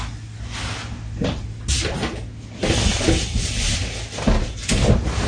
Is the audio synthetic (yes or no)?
no